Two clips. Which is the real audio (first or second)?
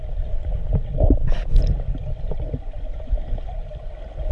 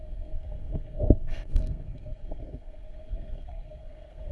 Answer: first